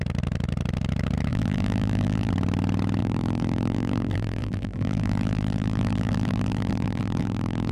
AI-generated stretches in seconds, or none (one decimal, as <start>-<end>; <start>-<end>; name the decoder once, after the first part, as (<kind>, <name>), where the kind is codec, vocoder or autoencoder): 1.3-2.3 (vocoder, BigVGAN v2); 3.0-7.7